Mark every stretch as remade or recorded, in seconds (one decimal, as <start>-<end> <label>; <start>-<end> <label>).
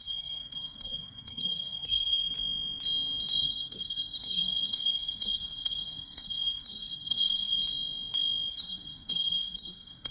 0.0-2.3 remade; 2.3-3.4 recorded; 3.4-7.6 remade; 7.6-8.5 recorded; 8.5-10.1 remade